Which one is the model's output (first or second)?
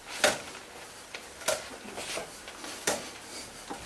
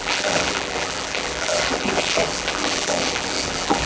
second